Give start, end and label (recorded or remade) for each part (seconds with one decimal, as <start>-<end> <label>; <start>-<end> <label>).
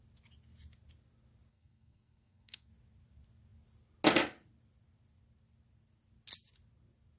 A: 0.0-1.5 recorded; 1.5-2.7 remade; 2.7-7.2 recorded